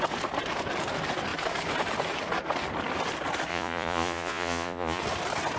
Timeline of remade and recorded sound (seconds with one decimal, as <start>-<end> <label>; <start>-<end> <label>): 0.0-3.5 recorded; 3.5-5.0 remade; 5.0-5.6 recorded